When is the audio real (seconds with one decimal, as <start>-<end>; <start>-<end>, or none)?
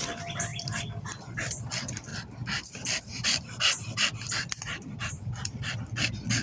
0.0-0.5; 1.6-2.1; 5.6-6.4